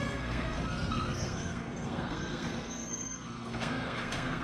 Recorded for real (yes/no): no